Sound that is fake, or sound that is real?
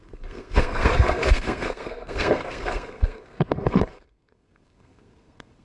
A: fake